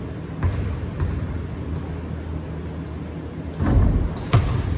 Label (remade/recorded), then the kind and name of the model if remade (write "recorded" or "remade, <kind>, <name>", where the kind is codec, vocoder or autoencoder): recorded